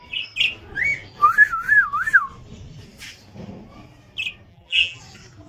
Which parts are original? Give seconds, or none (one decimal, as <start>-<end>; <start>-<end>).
0.0-4.5; 5.0-5.5